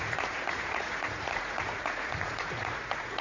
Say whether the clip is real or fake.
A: fake